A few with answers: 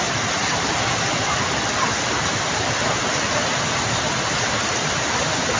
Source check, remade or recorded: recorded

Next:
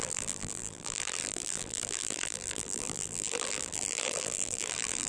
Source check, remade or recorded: remade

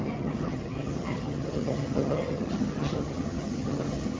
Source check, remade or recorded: remade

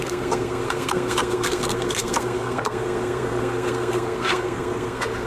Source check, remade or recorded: remade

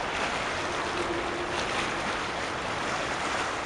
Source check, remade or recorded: recorded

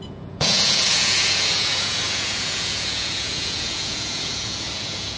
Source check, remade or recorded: remade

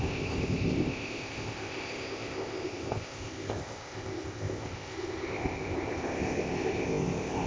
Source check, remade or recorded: remade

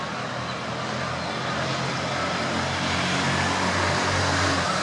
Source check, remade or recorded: recorded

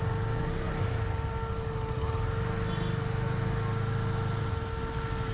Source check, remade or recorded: recorded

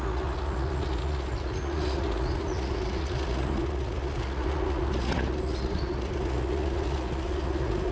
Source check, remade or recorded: remade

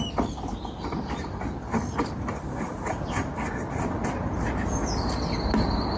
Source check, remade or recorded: recorded